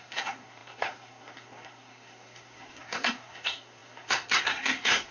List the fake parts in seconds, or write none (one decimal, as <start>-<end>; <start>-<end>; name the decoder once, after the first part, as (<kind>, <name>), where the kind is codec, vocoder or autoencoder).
0.0-5.1 (codec, SNAC)